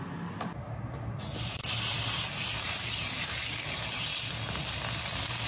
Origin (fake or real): real